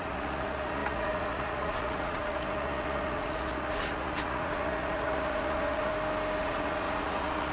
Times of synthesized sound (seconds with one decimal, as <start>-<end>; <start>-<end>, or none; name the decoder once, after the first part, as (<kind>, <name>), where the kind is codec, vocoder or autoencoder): 0.0-5.9 (vocoder, Vocos); 6.4-7.5